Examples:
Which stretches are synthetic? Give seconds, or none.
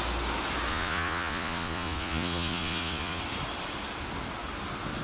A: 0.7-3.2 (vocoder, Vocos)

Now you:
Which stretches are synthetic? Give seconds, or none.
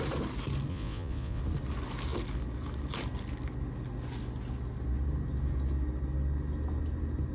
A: 0.7-1.4 (vocoder, Vocos)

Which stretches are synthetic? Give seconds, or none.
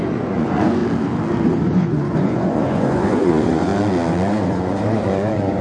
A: 0.0-0.8 (vocoder, Vocos); 1.4-3.7; 4.3-5.6